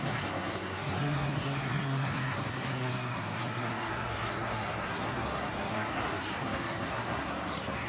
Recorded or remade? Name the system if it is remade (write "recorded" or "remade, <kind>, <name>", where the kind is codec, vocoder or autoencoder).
remade, codec, SNAC